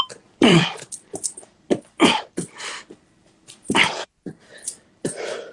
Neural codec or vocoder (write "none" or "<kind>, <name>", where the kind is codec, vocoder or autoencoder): vocoder, BigVGAN v2